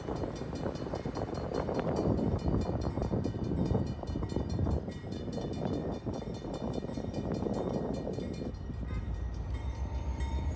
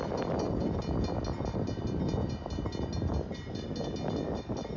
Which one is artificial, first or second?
first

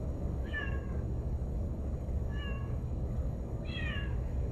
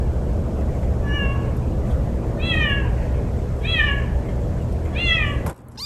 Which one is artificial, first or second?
first